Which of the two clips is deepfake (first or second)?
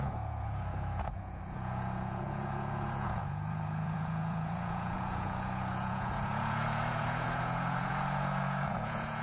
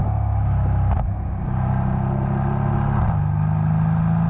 first